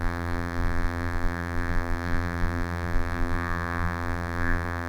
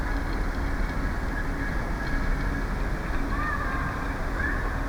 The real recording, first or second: second